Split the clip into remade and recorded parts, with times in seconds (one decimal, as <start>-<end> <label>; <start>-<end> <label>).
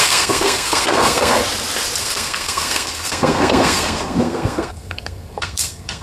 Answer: 0.0-1.4 remade; 1.4-2.0 recorded; 2.0-6.0 remade